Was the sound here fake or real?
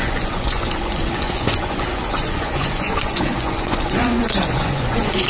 fake